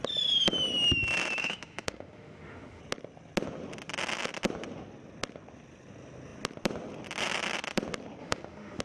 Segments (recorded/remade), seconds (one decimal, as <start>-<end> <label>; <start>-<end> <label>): 0.0-1.4 recorded; 1.4-2.8 remade; 2.8-8.2 recorded; 8.2-8.8 remade